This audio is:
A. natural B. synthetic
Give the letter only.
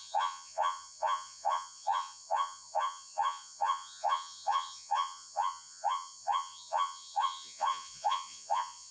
B